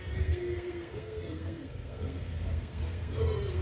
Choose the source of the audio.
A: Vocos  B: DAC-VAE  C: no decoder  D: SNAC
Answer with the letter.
D